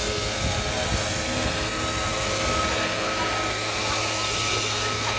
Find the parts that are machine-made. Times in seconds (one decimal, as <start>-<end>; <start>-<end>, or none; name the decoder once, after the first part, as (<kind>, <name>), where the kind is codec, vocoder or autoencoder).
none